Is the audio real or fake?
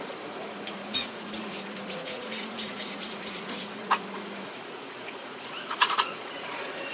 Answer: fake